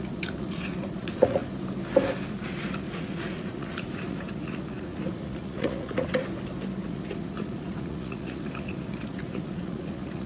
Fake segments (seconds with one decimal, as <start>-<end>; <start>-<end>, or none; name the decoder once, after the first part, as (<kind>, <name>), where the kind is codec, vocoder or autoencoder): 0.0-1.4 (vocoder, Vocos); 2.3-6.2; 6.8-10.3